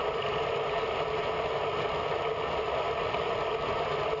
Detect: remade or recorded recorded